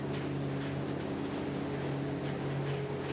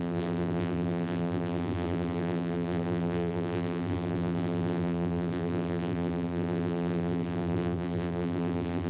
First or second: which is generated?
second